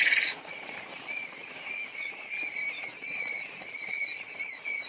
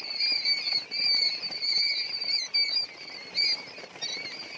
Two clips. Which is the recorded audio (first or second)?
second